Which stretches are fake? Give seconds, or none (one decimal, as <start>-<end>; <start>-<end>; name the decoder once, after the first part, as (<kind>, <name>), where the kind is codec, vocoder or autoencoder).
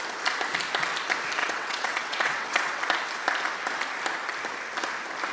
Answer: 1.4-2.8 (vocoder, WaveNeXt)